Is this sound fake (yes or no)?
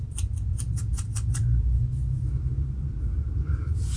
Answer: yes